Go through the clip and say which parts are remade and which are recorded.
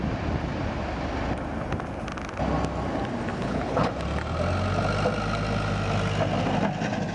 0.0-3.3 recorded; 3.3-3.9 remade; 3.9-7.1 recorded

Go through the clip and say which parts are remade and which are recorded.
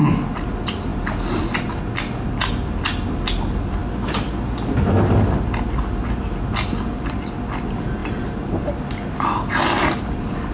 0.0-10.5 recorded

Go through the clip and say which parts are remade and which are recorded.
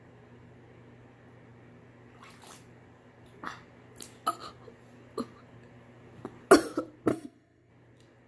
0.0-7.1 recorded; 7.1-7.7 remade; 7.7-8.3 recorded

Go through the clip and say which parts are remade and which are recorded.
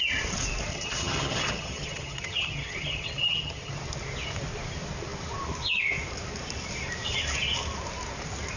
0.0-0.7 recorded; 0.7-3.7 remade; 3.7-8.6 recorded